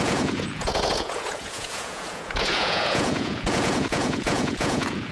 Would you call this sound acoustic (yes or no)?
no